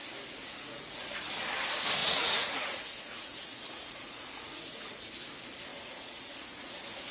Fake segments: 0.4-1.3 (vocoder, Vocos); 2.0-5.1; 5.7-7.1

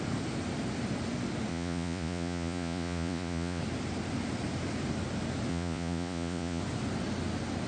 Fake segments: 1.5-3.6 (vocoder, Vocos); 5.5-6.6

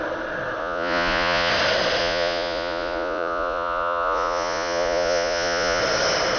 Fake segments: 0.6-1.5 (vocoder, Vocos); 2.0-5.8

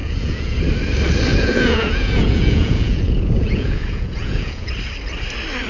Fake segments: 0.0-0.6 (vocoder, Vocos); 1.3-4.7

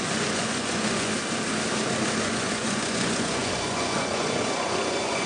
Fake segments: 0.0-1.1 (vocoder, Vocos); 2.2-5.3

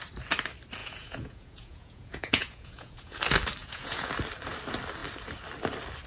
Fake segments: 0.8-3.2 (vocoder, Vocos); 3.6-4.1

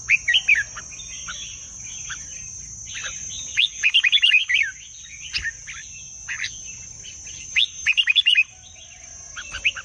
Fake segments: none

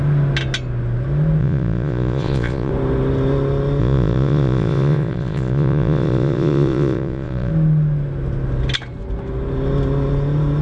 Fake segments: 1.4-2.7 (vocoder, Vocos); 3.8-7.5